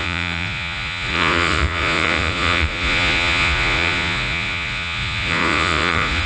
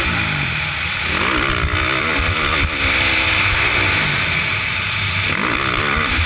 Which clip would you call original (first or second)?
second